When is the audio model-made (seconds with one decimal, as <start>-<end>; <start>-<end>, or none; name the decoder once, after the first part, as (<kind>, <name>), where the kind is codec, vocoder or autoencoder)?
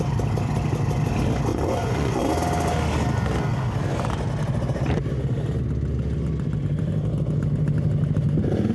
1.5-2.2 (vocoder, Vocos)